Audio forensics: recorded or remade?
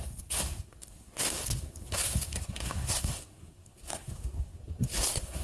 remade